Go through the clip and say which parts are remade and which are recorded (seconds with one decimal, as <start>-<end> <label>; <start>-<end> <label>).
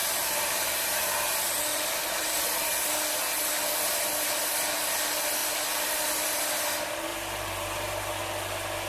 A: 0.0-1.0 remade; 1.0-1.7 recorded; 1.7-2.9 remade; 2.9-5.4 recorded; 5.4-6.4 remade; 6.4-7.1 recorded; 7.1-8.2 remade; 8.2-8.9 recorded